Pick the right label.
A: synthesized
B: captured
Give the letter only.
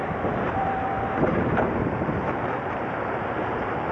A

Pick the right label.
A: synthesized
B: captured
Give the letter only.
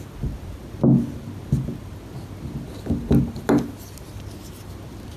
B